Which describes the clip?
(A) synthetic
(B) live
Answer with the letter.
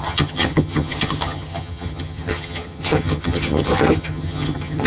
A